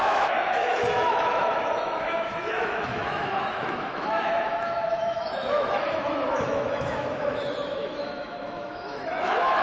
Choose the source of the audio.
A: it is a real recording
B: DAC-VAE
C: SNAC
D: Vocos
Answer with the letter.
B